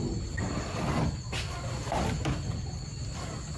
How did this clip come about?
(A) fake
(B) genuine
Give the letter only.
B